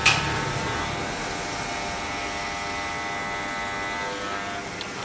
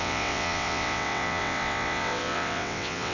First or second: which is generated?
second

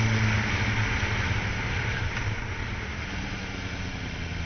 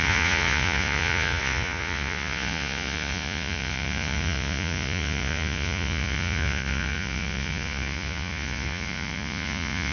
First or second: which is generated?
second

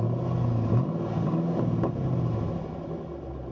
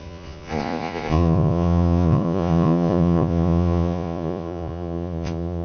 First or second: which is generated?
second